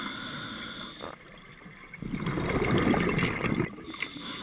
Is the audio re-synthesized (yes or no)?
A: no